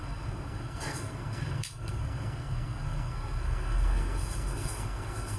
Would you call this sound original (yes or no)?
no